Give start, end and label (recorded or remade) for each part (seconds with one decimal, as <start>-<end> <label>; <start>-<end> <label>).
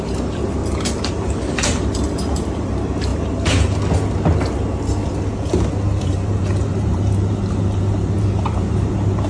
0.0-0.6 remade; 0.6-1.1 recorded; 1.1-3.1 remade; 3.1-6.0 recorded; 6.0-9.3 remade